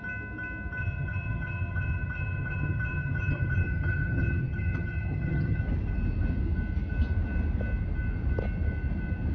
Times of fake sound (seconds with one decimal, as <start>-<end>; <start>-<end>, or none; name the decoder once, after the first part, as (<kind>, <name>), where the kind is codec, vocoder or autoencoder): 0.8-5.6 (vocoder, HiFi-GAN)